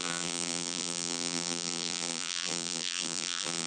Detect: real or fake fake